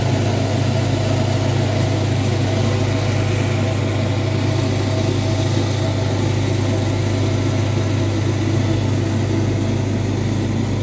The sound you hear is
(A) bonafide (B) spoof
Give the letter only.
A